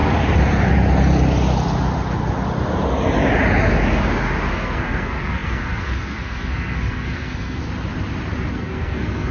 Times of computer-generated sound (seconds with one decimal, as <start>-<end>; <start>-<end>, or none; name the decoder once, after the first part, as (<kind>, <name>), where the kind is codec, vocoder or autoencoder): 4.5-7.6 (codec, SNAC); 8.5-9.3